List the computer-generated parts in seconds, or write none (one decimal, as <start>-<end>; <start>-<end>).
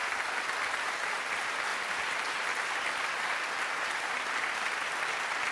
none